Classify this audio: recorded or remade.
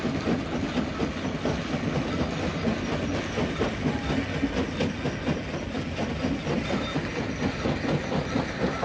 recorded